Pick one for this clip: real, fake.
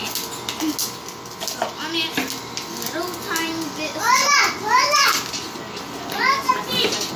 real